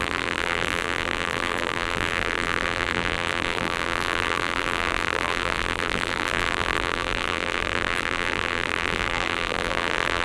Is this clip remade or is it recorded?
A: remade